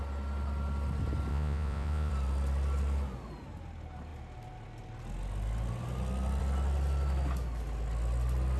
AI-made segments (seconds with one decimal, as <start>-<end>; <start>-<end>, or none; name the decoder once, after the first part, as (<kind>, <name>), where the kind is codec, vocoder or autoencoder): 1.3-2.1 (vocoder, Vocos)